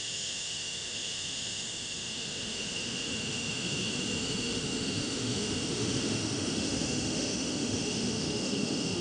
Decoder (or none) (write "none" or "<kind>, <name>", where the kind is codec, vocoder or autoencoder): autoencoder, DAC-VAE